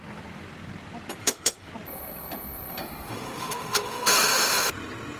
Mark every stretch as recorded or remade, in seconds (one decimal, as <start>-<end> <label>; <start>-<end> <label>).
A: 0.0-1.2 recorded; 1.2-1.7 remade; 1.7-2.8 recorded; 2.8-4.7 remade; 4.7-5.2 recorded